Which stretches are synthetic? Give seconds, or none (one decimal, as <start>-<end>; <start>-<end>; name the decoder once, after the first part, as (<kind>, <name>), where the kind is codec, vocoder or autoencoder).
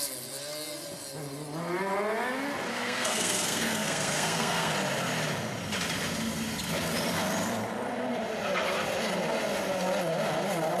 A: 2.7-4.7 (codec, SNAC)